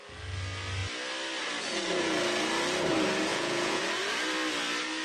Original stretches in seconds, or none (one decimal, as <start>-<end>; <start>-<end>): 0.0-3.3; 3.8-5.0